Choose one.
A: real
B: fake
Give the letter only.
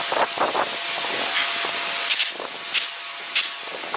A